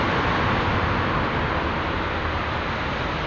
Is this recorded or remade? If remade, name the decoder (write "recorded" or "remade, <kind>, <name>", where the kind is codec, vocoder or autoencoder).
recorded